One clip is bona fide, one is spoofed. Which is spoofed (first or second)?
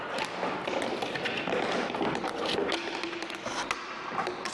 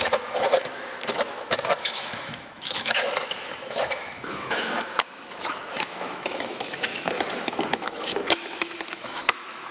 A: second